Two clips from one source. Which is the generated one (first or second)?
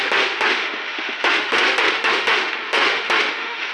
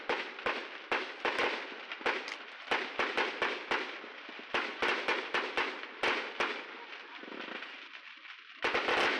first